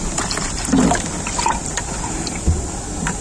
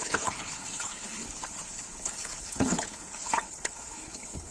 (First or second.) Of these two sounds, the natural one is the first